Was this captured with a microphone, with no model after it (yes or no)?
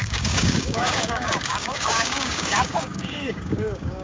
no